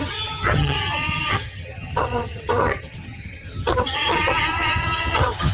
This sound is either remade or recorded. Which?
remade